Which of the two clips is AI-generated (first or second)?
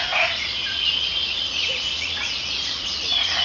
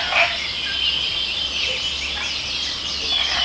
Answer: first